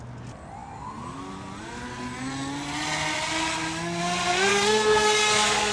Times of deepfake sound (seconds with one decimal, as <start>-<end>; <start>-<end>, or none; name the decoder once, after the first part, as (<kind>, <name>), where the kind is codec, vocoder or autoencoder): 4.5-5.7 (codec, DAC)